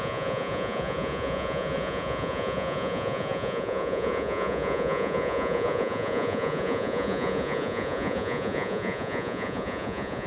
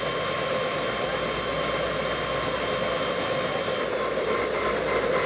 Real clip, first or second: second